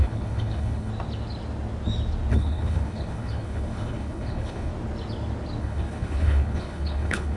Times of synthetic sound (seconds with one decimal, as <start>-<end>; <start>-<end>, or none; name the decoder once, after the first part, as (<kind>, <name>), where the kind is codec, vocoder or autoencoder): 0.0-0.9 (codec, HILCodec); 2.3-4.7; 5.6-7.4